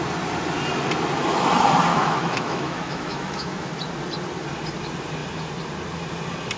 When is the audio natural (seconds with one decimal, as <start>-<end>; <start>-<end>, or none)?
0.0-1.9; 3.7-6.6